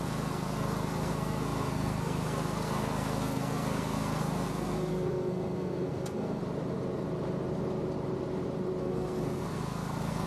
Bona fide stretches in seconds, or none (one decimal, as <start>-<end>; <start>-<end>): 6.4-8.8